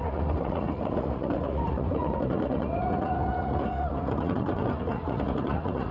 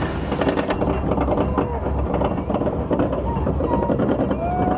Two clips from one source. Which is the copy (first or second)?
first